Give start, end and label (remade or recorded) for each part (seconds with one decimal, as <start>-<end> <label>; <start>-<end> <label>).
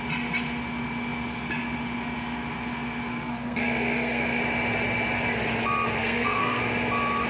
0.0-3.1 recorded; 3.1-4.4 remade; 4.4-6.0 recorded; 6.0-6.6 remade; 6.6-7.3 recorded